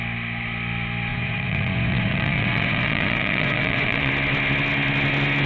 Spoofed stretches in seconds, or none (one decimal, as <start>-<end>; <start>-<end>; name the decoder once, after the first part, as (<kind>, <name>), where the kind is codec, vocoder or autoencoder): 1.1-4.1 (vocoder, Vocos)